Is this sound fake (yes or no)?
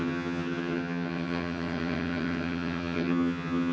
yes